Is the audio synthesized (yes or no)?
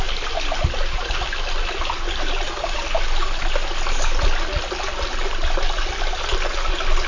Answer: no